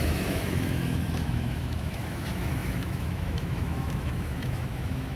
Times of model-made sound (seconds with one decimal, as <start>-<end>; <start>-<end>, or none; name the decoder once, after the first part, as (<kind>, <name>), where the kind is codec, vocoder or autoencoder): 0.0-5.2 (autoencoder, DAC-VAE)